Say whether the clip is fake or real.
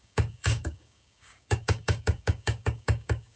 fake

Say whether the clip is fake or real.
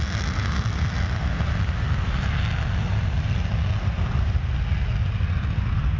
real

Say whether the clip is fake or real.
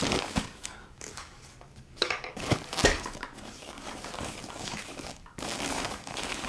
fake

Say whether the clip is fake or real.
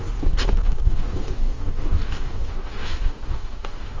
fake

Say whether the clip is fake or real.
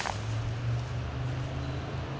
real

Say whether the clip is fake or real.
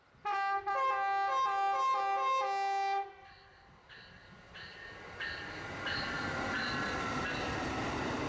real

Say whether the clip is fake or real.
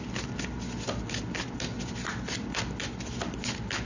real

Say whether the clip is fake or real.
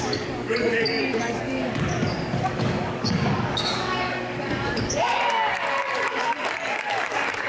fake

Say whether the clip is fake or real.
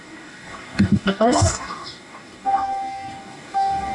fake